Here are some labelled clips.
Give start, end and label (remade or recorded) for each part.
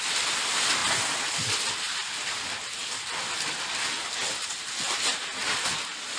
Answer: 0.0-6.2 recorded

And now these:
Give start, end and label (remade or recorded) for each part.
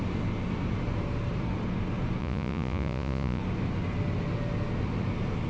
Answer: 0.0-2.2 recorded; 2.2-3.4 remade; 3.4-5.5 recorded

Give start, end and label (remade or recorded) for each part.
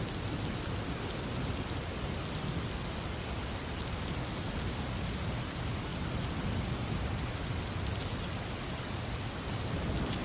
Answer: 0.0-10.2 recorded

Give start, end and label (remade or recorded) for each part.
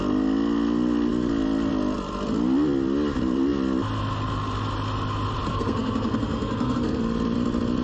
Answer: 0.0-5.5 recorded; 5.5-7.0 remade; 7.0-7.8 recorded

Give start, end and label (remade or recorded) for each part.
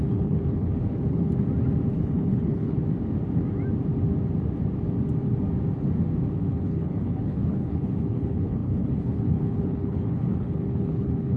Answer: 0.0-1.3 remade; 1.3-1.9 recorded; 1.9-2.8 remade; 2.8-6.5 recorded; 6.5-11.4 remade